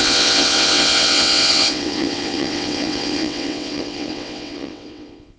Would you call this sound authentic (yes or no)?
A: no